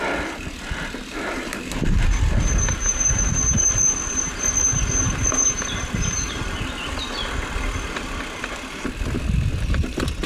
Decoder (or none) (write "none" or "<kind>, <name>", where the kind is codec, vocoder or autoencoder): none